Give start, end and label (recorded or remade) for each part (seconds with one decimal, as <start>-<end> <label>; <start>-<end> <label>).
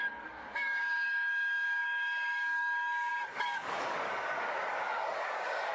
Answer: 0.0-5.7 remade